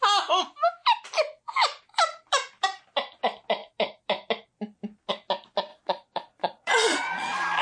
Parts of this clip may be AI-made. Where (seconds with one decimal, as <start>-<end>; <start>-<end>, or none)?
5.7-7.6